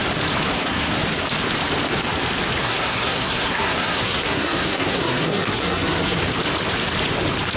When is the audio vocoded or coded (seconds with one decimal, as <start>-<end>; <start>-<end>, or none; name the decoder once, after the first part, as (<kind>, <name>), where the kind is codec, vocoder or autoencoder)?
0.5-1.0 (codec, SNAC); 2.6-6.2